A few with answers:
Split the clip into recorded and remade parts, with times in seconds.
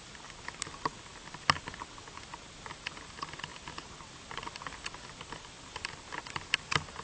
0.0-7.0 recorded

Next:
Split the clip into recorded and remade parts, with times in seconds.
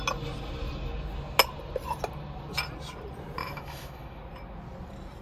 0.0-3.4 recorded; 3.4-4.2 remade; 4.2-5.2 recorded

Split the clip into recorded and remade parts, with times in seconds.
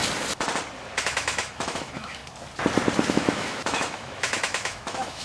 0.0-1.0 recorded; 1.0-2.2 remade; 2.2-3.1 recorded; 3.1-5.2 remade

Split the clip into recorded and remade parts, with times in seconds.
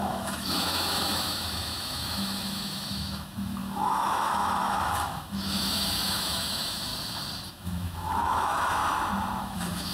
0.0-6.9 remade; 6.9-7.5 recorded; 7.5-8.8 remade; 8.8-9.4 recorded; 9.4-9.9 remade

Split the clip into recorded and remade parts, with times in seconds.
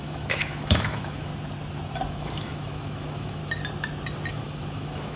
0.0-1.3 remade; 1.3-2.1 recorded; 2.1-3.4 remade; 3.4-4.3 recorded; 4.3-5.2 remade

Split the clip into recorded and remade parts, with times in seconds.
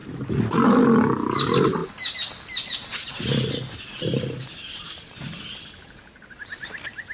0.0-7.1 recorded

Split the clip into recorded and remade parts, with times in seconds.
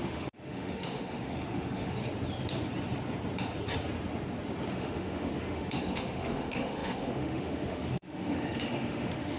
0.0-2.0 remade; 2.0-4.7 recorded; 4.7-9.4 remade